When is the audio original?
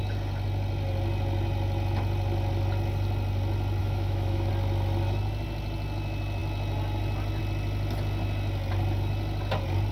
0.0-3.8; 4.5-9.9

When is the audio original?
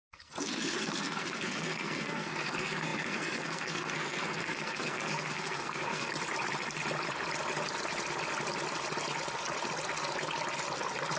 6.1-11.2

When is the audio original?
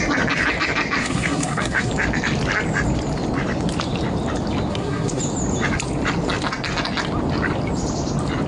0.0-1.0; 1.9-4.7; 5.2-8.5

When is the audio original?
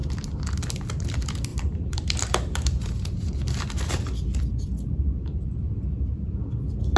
0.0-1.5; 3.4-7.0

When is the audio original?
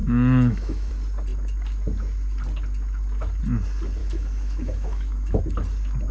0.9-4.0; 5.4-6.1